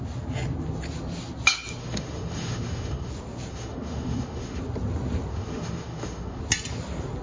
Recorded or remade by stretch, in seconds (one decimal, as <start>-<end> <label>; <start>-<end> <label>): 0.0-1.8 recorded; 1.8-3.1 remade; 3.1-3.5 recorded; 3.5-4.6 remade; 4.6-5.3 recorded; 5.3-6.4 remade; 6.4-7.2 recorded